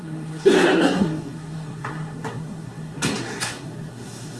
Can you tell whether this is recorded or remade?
remade